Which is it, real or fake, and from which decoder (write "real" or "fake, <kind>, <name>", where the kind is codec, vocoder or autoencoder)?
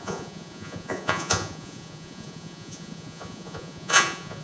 fake, vocoder, Vocos